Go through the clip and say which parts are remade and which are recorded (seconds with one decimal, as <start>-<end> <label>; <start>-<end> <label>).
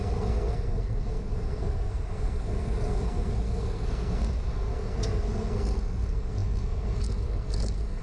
0.0-8.0 remade